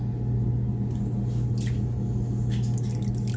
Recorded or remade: recorded